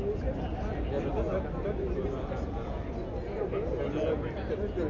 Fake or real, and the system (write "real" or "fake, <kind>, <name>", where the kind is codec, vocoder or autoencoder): real